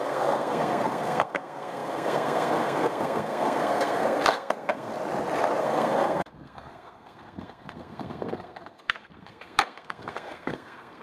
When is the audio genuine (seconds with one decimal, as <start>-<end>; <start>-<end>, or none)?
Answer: 4.9-5.6